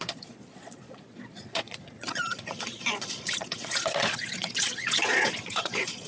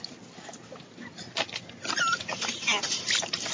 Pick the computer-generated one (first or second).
first